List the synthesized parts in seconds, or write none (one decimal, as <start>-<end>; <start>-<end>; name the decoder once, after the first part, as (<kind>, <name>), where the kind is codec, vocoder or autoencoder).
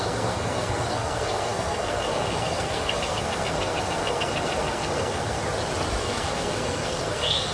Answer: 0.0-5.4 (codec, SNAC); 6.0-7.5